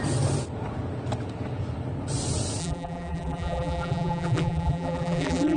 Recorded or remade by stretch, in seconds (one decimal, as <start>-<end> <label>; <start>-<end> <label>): 0.0-2.6 recorded; 2.6-5.6 remade